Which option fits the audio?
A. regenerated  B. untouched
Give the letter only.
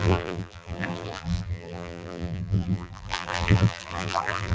A